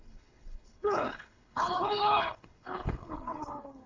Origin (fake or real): fake